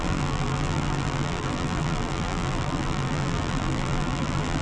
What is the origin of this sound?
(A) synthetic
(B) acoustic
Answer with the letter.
A